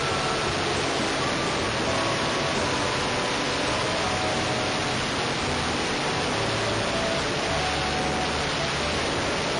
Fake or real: real